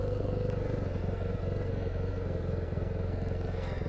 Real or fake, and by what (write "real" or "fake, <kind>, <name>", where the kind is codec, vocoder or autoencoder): fake, codec, SNAC